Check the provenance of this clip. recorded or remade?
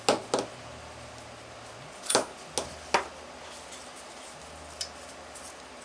recorded